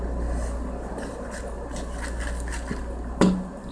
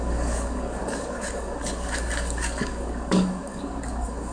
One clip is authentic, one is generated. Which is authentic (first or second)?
first